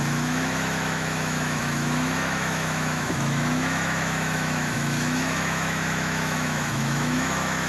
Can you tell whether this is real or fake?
fake